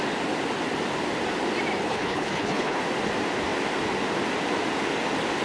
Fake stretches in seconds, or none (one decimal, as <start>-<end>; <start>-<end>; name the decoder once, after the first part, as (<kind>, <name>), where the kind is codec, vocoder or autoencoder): 1.8-2.8 (codec, HILCodec)